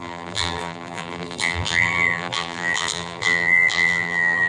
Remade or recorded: remade